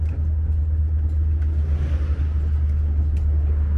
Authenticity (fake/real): real